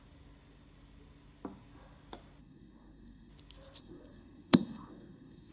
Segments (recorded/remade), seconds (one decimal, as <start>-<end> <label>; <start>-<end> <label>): 0.0-2.4 recorded; 2.4-3.3 remade; 3.3-3.8 recorded; 3.8-5.5 remade